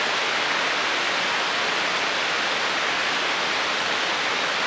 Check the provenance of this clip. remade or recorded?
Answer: recorded